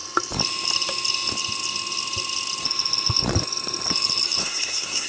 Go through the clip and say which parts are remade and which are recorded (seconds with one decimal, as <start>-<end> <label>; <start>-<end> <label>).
0.0-4.4 recorded; 4.4-5.1 remade